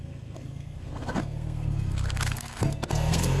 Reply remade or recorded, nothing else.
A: remade